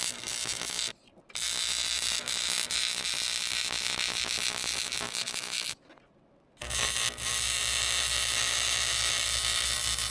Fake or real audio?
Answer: real